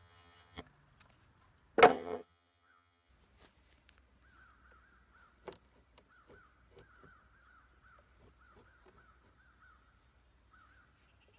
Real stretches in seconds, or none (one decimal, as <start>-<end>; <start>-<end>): 0.6-1.9; 3.1-11.4